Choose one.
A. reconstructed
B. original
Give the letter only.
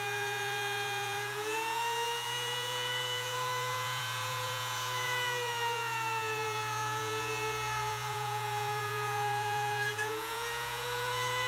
A